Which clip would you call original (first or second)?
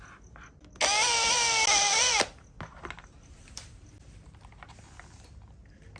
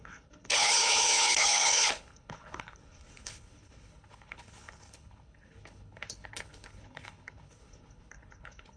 first